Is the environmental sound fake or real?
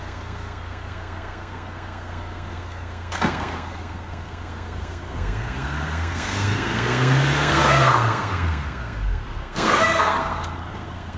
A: fake